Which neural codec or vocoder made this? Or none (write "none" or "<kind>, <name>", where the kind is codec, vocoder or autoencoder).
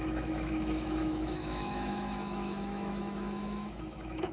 autoencoder, DAC-VAE